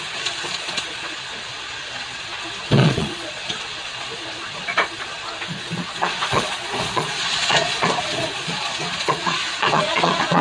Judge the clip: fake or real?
fake